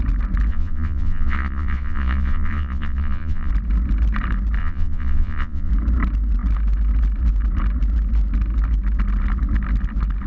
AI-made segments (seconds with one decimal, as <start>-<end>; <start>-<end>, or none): 0.5-3.5; 4.6-5.7